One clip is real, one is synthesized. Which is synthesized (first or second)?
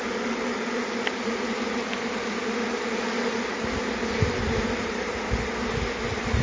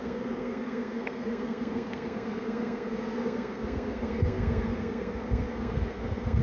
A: second